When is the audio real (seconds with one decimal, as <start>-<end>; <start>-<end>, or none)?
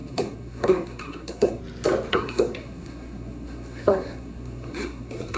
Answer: 1.6-2.1